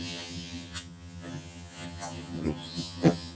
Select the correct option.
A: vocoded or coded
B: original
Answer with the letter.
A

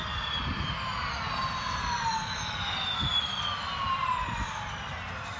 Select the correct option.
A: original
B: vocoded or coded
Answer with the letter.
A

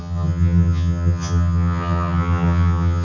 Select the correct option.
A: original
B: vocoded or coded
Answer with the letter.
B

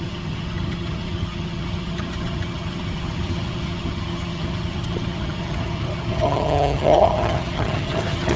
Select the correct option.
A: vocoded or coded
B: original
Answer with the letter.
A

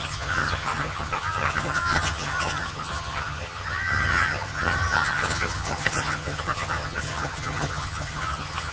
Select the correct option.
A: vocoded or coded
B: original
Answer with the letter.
A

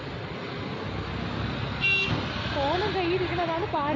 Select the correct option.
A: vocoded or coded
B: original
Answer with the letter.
B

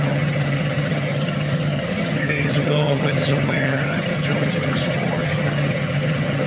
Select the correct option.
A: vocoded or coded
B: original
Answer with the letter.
A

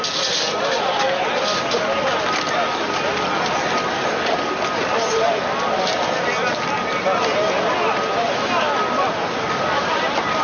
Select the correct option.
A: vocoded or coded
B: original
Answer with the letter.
B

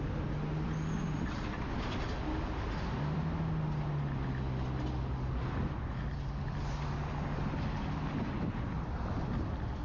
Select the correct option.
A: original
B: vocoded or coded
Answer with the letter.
A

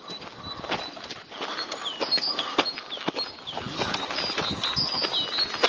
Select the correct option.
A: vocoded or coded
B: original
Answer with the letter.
B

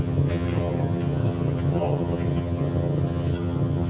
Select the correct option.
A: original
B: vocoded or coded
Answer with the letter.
B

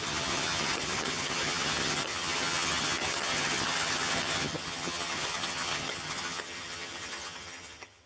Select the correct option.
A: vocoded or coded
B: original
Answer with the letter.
A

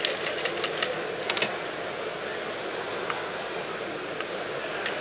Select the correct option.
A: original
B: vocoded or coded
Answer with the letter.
A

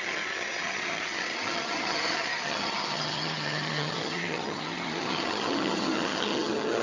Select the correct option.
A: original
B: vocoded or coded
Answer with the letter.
B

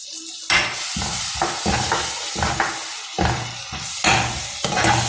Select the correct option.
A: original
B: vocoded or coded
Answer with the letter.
A